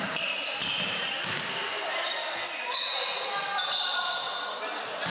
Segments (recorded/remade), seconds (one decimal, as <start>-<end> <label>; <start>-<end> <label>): 0.0-0.6 remade; 0.6-3.7 recorded; 3.7-5.1 remade